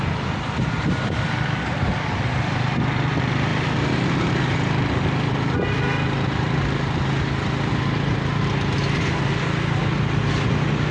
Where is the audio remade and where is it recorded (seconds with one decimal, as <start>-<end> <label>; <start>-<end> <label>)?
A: 0.0-10.9 recorded